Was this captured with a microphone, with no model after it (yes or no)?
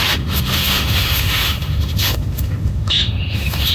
no